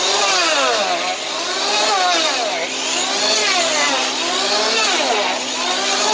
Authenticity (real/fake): real